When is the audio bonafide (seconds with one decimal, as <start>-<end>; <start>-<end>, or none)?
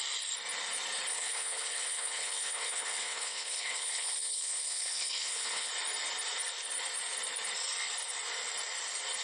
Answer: 0.0-1.1; 5.7-9.2